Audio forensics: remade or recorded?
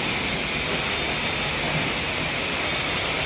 recorded